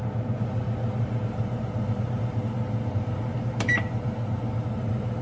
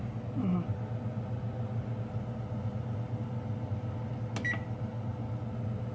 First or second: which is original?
second